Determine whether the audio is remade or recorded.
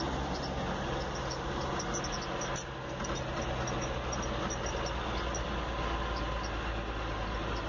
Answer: recorded